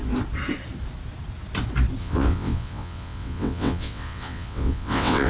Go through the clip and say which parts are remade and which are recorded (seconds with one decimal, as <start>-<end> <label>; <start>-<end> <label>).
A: 0.0-2.0 recorded; 2.0-5.3 remade